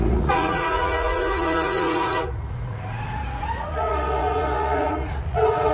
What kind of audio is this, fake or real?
fake